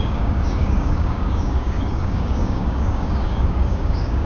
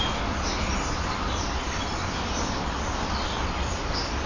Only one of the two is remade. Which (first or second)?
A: first